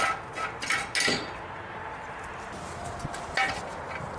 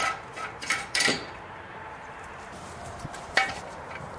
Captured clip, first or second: first